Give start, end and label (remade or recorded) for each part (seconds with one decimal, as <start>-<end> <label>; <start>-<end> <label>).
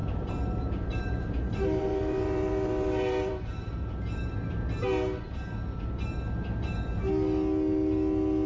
0.0-3.9 remade; 3.9-8.5 recorded